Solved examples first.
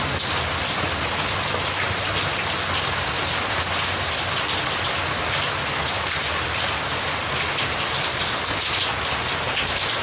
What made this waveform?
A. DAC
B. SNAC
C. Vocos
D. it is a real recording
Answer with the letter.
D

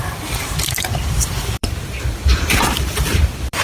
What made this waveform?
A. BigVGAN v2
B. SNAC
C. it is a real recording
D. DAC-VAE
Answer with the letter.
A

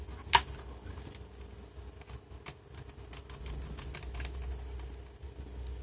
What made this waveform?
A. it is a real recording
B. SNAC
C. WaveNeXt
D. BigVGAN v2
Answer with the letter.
A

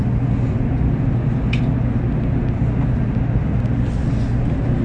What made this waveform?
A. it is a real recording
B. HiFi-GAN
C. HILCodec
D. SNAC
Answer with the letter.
A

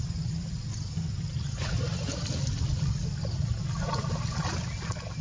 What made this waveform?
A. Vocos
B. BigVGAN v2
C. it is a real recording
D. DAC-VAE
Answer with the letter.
C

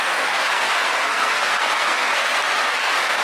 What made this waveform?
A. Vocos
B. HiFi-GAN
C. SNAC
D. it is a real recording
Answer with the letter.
C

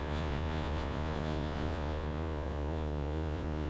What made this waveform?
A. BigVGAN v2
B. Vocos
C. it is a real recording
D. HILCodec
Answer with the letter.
B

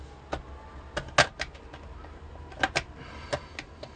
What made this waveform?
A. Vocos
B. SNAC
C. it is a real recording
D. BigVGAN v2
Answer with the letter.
C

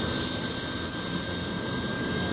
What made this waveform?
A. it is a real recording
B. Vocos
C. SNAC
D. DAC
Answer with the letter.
A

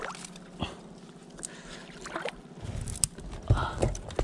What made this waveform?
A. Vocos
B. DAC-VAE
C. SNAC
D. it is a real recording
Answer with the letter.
D